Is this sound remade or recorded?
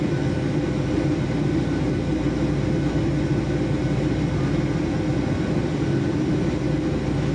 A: recorded